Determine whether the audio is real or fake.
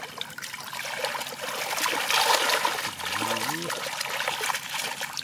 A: real